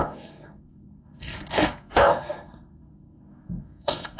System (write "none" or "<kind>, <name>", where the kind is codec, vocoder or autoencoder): codec, SNAC